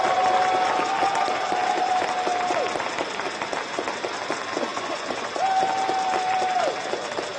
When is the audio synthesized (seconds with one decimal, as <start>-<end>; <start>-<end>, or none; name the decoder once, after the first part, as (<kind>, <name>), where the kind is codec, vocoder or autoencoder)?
4.7-5.3 (vocoder, Vocos)